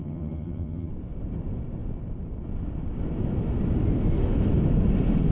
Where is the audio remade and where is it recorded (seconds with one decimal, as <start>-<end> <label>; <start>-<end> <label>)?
0.0-0.9 remade; 0.9-5.3 recorded